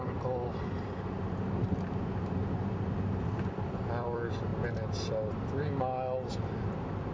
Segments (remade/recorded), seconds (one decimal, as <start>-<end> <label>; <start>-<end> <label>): 0.0-2.4 remade; 2.4-3.4 recorded; 3.4-4.5 remade; 4.5-6.3 recorded; 6.3-7.1 remade